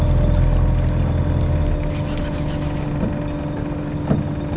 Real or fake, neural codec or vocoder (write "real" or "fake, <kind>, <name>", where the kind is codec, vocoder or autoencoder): real